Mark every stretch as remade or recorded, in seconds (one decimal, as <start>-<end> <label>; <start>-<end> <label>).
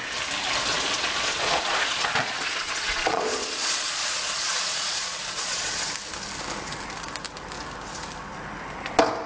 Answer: 0.0-0.7 recorded; 0.7-5.9 remade; 5.9-9.3 recorded